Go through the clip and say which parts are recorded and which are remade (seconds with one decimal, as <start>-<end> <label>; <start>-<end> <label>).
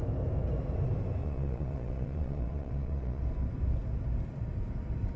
0.0-1.2 recorded; 1.2-3.2 remade; 3.2-5.2 recorded